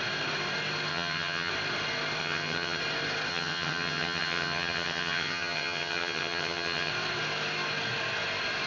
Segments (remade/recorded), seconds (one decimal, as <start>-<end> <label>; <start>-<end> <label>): 0.0-0.9 recorded; 0.9-1.5 remade; 1.5-2.2 recorded; 2.2-2.8 remade; 2.8-3.3 recorded; 3.3-6.9 remade; 6.9-8.7 recorded